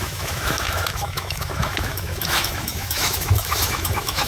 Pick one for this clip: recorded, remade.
remade